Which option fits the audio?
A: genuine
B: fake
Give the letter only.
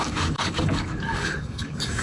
B